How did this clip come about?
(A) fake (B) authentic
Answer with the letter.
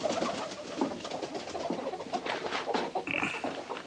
B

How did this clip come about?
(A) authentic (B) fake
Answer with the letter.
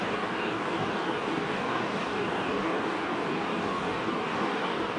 B